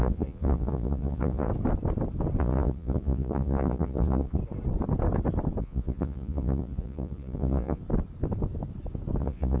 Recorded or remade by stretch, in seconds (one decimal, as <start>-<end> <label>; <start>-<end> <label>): 0.0-1.5 remade; 1.5-2.4 recorded; 2.4-4.4 remade; 4.4-5.6 recorded; 5.6-7.8 remade; 7.8-9.2 recorded; 9.2-9.6 remade